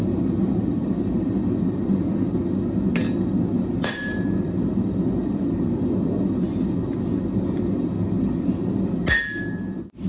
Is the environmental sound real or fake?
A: real